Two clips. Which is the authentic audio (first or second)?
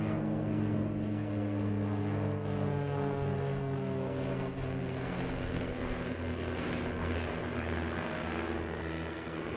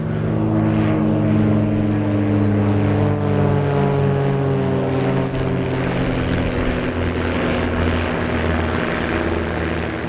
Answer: second